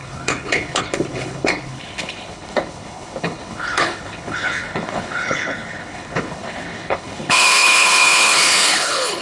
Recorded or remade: remade